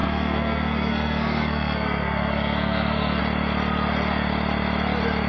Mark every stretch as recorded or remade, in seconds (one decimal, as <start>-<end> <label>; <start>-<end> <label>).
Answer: 0.0-3.2 remade; 3.2-5.3 recorded